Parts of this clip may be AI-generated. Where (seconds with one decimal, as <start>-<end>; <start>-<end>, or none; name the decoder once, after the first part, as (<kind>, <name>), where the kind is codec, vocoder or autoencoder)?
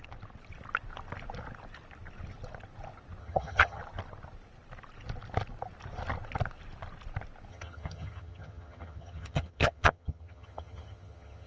3.2-3.8 (vocoder, HiFi-GAN); 7.5-11.5